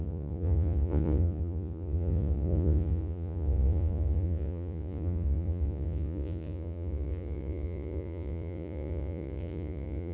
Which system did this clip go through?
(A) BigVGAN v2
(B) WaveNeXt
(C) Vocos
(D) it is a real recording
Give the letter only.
C